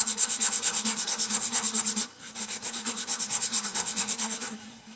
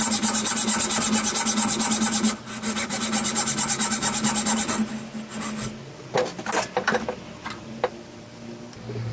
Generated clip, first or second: first